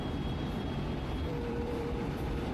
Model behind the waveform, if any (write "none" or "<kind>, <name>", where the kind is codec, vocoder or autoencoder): vocoder, BigVGAN v2